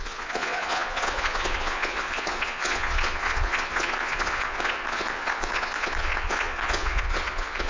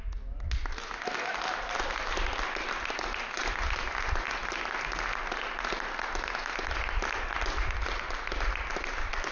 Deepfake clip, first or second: first